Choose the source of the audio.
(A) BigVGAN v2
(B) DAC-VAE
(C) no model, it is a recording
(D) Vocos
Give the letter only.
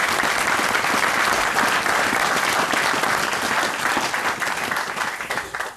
C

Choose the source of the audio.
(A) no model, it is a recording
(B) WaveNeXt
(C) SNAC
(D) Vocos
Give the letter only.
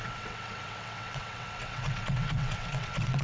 B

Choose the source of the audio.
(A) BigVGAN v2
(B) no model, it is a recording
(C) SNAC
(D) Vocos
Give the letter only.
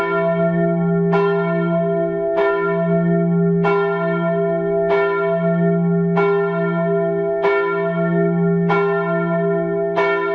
B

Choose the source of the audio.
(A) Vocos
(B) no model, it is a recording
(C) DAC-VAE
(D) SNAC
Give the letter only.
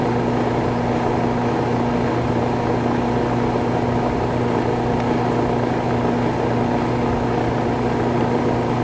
B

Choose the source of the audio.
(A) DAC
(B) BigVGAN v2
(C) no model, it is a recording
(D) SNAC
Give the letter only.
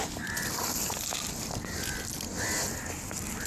B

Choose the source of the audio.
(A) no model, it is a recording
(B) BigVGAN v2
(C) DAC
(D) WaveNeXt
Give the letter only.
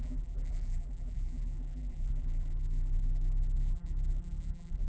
B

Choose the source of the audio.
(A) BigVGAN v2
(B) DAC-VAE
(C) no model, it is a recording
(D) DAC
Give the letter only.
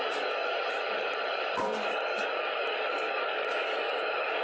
D